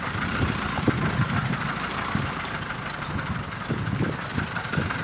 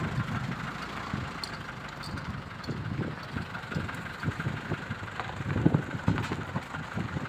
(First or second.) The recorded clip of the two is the second